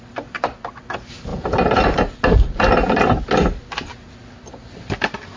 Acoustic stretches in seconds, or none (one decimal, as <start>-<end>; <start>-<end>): 0.0-5.4